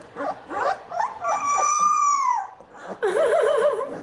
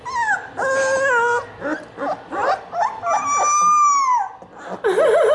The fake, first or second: first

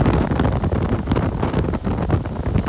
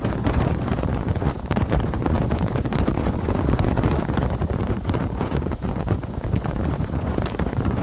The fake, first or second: second